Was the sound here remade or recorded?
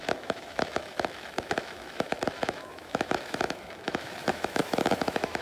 remade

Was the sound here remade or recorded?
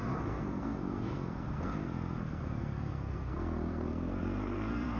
remade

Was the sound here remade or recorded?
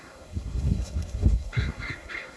remade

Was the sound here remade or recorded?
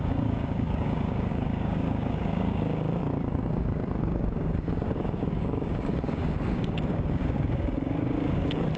remade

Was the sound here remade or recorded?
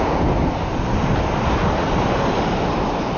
recorded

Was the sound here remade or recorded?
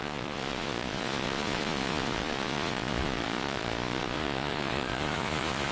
remade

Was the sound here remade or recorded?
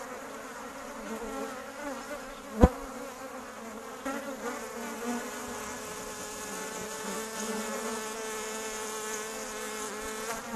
recorded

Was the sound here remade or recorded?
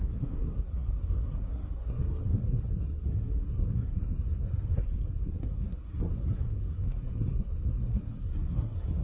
remade